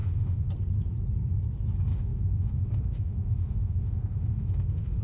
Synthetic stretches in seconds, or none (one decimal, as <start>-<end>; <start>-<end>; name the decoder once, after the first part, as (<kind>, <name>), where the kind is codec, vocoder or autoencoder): 0.0-0.5 (autoencoder, DAC-VAE); 1.9-5.0